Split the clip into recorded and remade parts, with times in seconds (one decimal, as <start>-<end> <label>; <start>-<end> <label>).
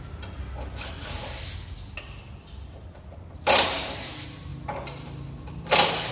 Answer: 0.0-6.1 recorded